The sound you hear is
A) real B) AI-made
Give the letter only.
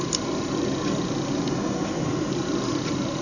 A